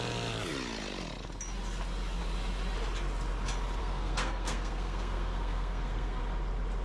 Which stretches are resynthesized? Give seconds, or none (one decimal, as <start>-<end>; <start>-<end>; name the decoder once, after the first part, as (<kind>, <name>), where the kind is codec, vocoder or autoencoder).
3.8-6.2 (codec, SNAC)